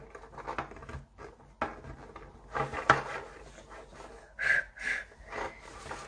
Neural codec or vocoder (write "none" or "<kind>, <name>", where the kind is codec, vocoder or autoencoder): none